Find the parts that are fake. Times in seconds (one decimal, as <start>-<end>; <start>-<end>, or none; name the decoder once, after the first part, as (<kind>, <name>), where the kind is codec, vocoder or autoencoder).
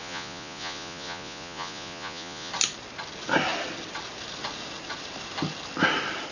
0.0-2.5 (vocoder, Vocos)